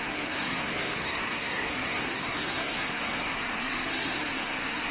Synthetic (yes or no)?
yes